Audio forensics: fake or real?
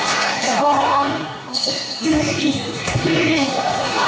fake